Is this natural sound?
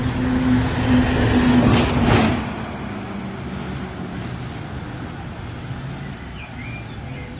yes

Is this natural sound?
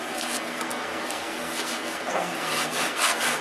no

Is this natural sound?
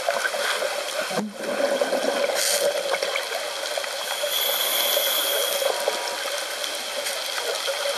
yes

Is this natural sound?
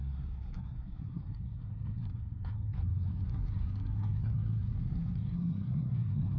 no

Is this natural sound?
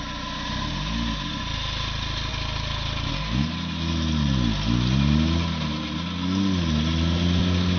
yes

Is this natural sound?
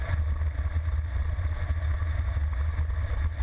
yes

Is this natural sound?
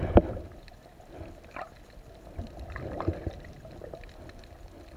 yes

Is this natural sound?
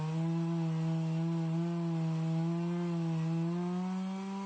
yes